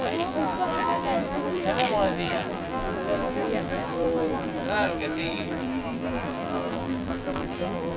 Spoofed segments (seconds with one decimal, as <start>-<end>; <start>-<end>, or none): 0.0-8.0